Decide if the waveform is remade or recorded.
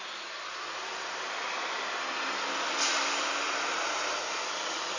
recorded